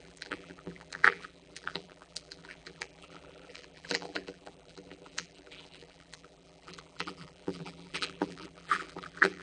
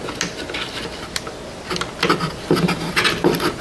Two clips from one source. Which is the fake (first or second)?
first